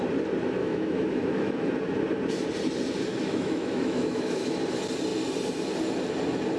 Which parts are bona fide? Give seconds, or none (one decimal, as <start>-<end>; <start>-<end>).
0.0-0.6; 1.7-3.1; 4.5-6.6